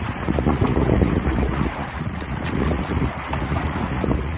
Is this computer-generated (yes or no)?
yes